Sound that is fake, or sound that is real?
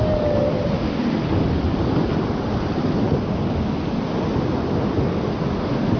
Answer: real